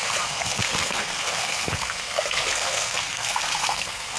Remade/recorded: remade